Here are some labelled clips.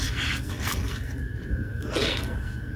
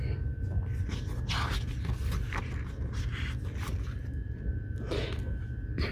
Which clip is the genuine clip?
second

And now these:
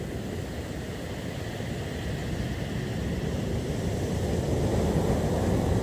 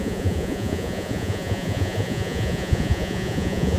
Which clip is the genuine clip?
first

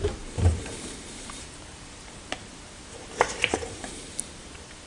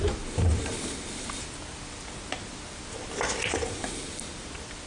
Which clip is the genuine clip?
second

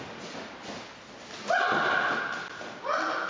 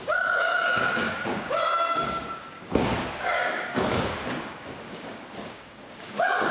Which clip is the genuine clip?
first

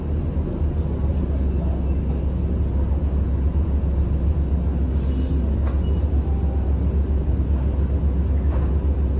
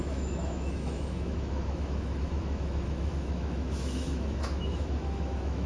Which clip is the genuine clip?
first